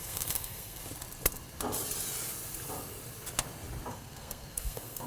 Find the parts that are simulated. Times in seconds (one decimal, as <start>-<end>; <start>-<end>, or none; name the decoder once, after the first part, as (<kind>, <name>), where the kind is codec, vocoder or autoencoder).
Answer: 0.0-0.8 (codec, SNAC); 3.9-5.1